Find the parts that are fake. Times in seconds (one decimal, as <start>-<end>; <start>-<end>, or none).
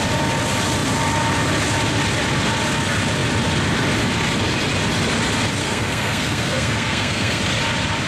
5.6-7.4